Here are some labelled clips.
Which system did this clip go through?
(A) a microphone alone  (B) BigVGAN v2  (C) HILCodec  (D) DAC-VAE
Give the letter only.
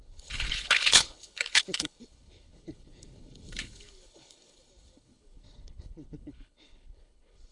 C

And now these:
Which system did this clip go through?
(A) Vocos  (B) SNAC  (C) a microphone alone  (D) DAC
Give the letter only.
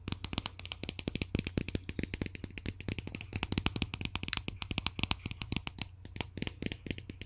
C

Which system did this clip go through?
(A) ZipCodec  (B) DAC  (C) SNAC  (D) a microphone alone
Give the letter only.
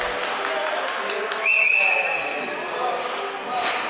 D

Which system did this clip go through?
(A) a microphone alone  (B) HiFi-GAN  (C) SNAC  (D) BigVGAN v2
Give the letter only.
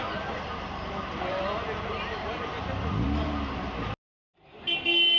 A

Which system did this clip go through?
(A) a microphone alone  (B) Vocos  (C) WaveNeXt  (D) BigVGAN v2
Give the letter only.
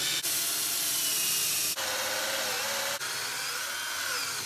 A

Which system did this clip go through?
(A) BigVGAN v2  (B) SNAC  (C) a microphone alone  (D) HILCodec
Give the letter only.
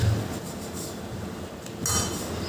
C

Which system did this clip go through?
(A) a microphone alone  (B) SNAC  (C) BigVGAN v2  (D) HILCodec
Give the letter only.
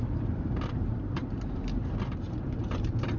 C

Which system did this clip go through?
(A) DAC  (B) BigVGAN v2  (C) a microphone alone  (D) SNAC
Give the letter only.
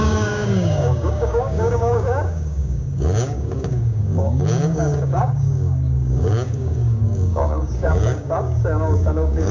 A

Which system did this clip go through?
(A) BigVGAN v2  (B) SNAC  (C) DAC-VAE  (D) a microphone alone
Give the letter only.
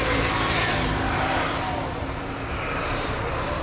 A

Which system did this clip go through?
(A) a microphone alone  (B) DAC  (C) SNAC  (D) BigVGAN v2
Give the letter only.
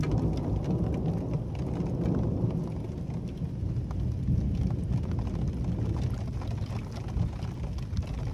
A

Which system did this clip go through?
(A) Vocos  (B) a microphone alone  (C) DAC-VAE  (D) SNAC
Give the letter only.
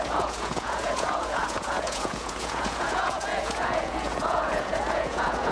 A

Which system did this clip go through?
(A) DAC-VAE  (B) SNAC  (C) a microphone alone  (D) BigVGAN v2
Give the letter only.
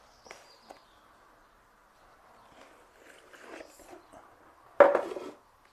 C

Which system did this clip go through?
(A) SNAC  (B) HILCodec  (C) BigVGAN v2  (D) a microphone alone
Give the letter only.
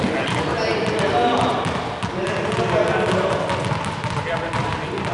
D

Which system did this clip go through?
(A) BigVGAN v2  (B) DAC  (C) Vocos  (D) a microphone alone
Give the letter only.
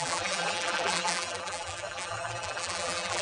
A